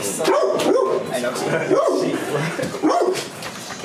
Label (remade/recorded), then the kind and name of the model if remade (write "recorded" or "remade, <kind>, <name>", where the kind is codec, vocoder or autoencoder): recorded